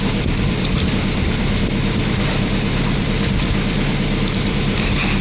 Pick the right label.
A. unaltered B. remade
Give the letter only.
B